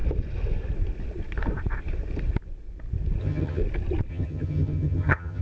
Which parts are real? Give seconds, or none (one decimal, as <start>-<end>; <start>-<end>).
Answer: 0.0-3.2; 3.6-4.1